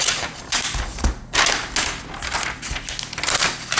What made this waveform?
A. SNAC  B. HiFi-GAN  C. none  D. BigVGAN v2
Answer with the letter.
C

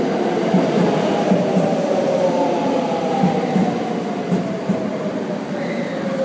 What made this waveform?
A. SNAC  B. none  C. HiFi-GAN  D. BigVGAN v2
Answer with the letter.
D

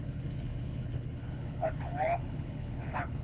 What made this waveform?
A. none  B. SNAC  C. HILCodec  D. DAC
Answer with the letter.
C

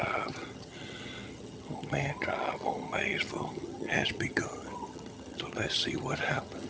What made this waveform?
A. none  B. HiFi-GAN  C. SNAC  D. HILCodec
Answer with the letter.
B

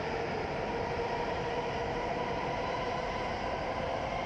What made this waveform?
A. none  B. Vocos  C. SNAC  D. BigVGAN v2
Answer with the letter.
D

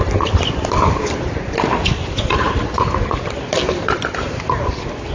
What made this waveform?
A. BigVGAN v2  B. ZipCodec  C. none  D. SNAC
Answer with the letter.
C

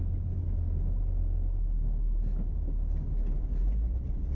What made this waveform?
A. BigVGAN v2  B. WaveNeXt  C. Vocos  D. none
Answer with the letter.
D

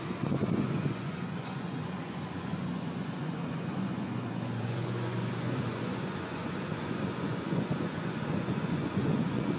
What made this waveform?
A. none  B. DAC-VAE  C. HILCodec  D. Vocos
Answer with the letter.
D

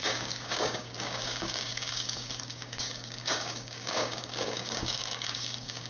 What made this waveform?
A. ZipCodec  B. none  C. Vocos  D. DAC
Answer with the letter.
D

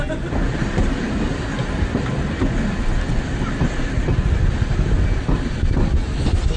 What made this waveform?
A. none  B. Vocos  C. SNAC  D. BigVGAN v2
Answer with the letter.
A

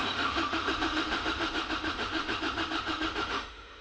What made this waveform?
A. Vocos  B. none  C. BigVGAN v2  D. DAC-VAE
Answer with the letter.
D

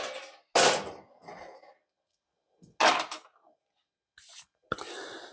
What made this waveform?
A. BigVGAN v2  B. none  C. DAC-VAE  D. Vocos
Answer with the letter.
B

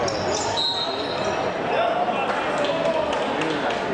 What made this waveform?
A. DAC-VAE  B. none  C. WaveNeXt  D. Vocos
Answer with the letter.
B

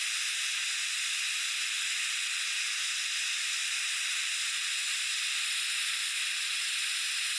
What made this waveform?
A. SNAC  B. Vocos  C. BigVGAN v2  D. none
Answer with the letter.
D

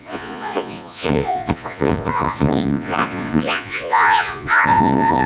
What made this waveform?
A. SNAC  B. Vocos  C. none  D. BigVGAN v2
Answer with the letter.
B